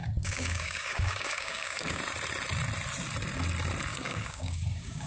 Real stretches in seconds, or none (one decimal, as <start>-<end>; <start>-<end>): 2.0-3.9